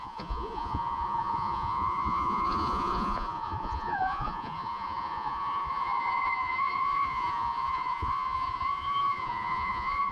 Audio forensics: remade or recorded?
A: remade